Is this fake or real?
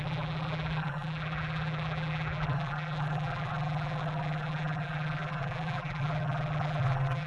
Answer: fake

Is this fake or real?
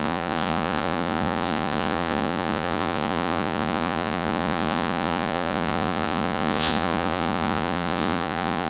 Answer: fake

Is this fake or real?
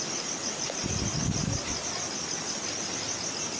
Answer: real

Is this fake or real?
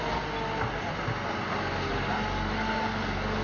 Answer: real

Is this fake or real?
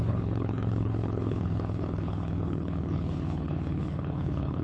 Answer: fake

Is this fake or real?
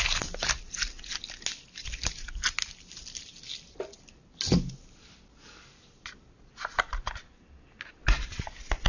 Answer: real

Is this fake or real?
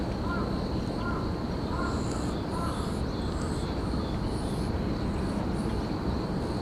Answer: real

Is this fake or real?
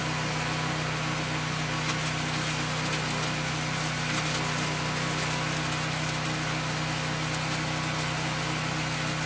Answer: real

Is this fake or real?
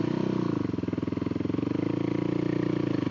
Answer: real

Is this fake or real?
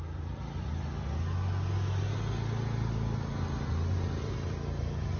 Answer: real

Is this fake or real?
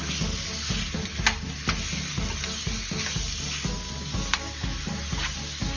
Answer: real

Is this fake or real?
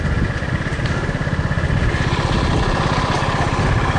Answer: real